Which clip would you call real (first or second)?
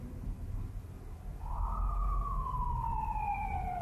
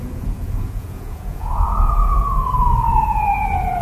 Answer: first